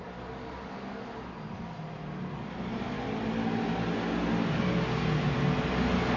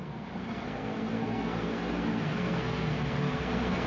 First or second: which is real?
first